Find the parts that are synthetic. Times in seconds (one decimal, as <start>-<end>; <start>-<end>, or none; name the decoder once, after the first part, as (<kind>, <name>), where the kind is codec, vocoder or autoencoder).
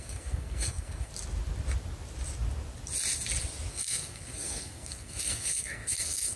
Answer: 0.0-1.1 (codec, SNAC); 3.7-6.4